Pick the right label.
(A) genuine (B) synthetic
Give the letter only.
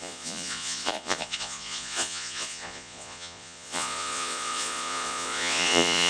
B